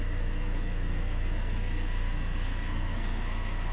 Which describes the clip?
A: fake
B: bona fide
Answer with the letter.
A